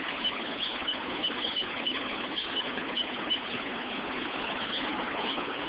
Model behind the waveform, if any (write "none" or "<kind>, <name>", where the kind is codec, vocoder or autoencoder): codec, HILCodec